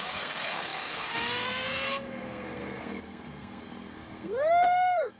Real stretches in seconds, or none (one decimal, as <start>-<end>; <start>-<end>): none